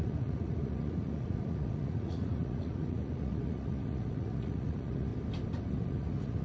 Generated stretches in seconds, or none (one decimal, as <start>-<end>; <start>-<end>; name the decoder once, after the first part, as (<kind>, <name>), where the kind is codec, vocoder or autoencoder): 0.0-5.1 (vocoder, Vocos); 5.7-6.4